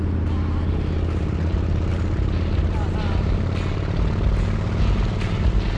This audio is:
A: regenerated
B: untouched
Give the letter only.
B